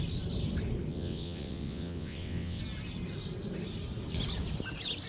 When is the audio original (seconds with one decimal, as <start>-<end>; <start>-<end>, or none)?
0.0-0.9; 2.6-5.1